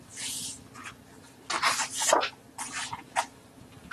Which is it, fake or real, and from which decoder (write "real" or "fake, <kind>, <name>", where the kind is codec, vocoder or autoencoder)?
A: real